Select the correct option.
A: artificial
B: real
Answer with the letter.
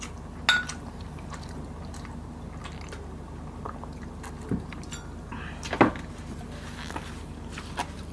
B